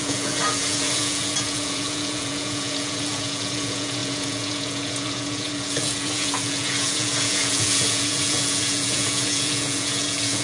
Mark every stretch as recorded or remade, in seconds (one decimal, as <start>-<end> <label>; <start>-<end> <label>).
0.0-10.4 remade